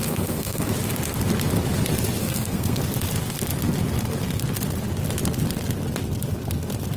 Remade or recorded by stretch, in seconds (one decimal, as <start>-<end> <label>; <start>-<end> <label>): 0.0-0.7 remade; 0.7-2.2 recorded; 2.2-2.8 remade; 2.8-7.0 recorded